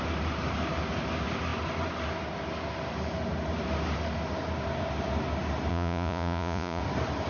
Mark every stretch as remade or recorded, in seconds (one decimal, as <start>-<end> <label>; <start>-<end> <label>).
0.0-5.7 recorded; 5.7-6.8 remade; 6.8-7.3 recorded